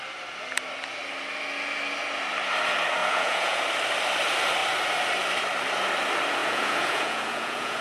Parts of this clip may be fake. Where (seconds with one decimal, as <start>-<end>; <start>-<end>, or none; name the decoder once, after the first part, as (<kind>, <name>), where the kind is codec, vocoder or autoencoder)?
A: 3.0-3.6 (vocoder, Vocos); 6.4-7.8

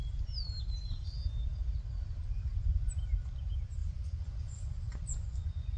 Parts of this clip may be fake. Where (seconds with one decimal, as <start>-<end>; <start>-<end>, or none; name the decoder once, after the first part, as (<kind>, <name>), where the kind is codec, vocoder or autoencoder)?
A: 3.8-5.8 (vocoder, Vocos)